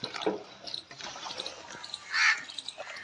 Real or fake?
real